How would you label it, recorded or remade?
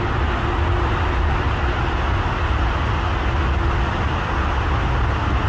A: recorded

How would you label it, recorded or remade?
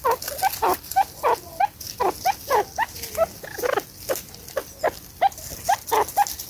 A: recorded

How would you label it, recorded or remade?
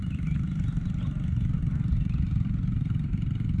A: remade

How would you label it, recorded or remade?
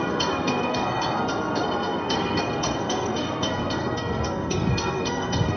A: remade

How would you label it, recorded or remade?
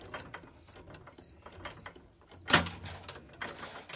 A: recorded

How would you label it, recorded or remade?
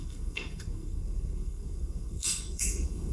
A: remade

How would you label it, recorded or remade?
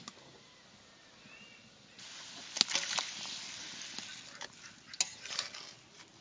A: recorded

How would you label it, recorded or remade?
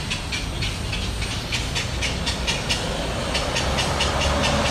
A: recorded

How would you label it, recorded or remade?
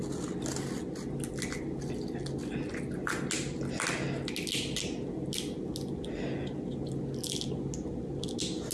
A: recorded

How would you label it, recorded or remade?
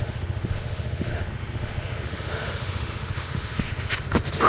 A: remade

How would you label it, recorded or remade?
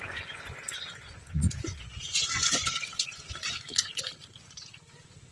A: remade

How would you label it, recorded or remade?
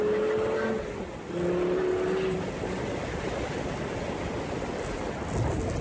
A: recorded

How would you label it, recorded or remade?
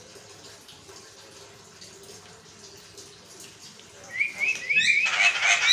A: recorded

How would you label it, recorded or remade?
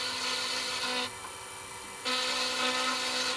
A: recorded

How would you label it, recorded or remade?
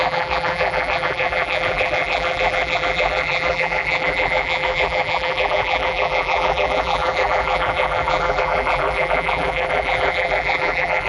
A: remade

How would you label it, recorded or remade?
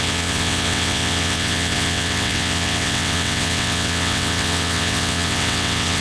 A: remade